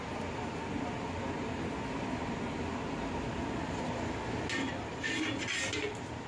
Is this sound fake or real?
real